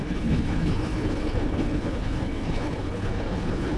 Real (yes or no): no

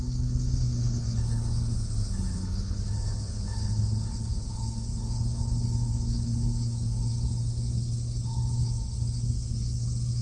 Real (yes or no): no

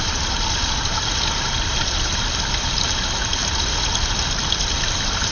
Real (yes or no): yes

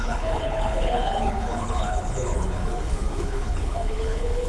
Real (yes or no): no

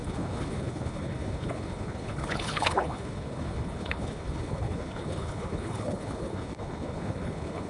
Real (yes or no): no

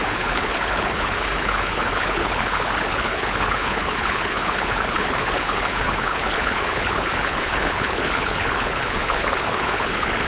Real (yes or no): no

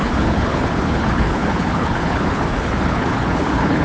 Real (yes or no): no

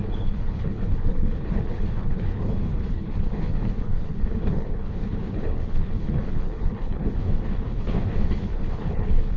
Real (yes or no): no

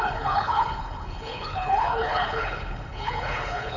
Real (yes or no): no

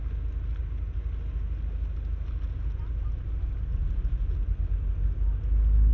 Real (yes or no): yes